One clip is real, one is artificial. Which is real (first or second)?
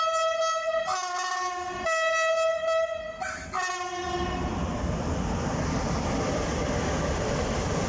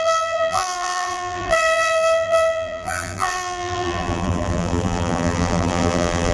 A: first